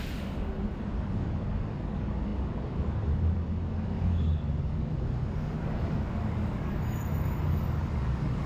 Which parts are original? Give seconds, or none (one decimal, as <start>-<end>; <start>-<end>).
none

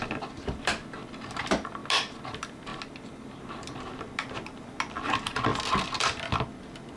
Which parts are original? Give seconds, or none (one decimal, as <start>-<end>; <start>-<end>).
0.0-7.0

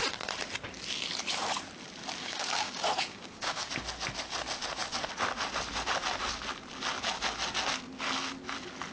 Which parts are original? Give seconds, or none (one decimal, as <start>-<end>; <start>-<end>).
0.0-2.2; 3.7-8.9

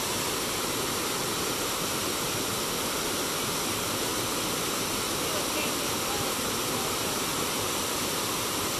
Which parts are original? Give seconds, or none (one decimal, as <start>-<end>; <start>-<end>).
1.2-2.0; 4.1-5.6

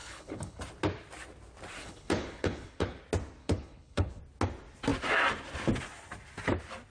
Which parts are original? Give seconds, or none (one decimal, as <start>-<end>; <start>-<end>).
0.6-1.8; 3.0-3.4; 4.2-6.9